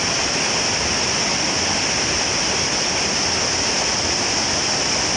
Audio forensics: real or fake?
real